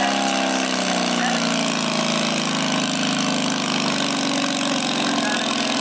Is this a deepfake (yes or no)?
no